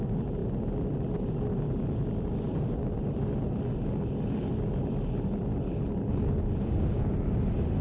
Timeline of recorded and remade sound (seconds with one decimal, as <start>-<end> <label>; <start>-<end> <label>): 0.0-6.6 recorded; 6.6-7.1 remade; 7.1-7.8 recorded